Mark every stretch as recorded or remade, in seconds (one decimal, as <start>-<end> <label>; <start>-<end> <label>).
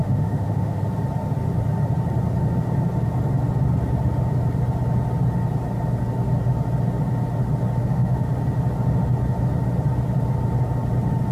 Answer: 0.0-0.8 remade; 0.8-7.8 recorded; 7.8-8.3 remade; 8.3-11.3 recorded